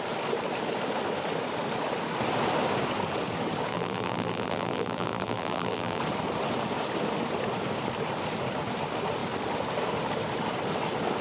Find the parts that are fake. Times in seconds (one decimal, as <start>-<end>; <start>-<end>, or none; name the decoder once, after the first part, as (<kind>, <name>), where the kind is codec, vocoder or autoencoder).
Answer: 3.7-6.0 (vocoder, BigVGAN v2)